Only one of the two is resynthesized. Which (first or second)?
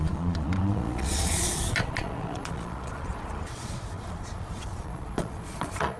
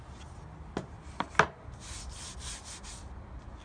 first